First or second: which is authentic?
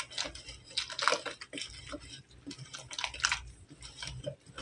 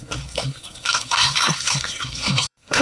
first